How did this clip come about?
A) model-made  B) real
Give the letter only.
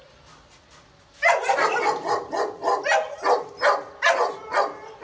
B